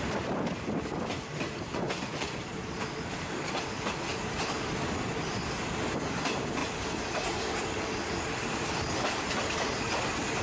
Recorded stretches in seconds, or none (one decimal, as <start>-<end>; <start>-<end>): 0.0-1.7; 2.4-10.4